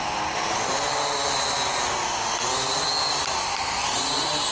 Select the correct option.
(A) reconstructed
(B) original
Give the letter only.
B